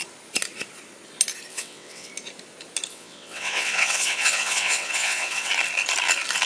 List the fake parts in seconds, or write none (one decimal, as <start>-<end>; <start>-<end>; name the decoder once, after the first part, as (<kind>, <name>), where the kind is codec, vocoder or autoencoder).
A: 1.5-2.1 (vocoder, WaveNeXt); 2.9-5.5